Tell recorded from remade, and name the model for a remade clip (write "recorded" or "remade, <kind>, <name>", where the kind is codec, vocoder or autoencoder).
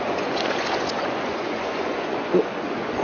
remade, vocoder, Vocos